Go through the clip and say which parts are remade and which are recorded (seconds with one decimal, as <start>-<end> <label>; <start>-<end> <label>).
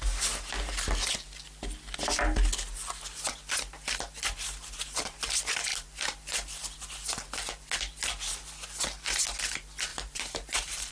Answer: 0.0-5.7 recorded; 5.7-6.9 remade; 6.9-9.9 recorded; 9.9-10.9 remade